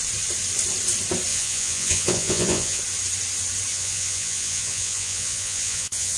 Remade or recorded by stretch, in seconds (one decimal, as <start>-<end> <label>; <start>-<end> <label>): 0.0-1.3 recorded; 1.3-2.8 remade; 2.8-3.7 recorded; 3.7-6.2 remade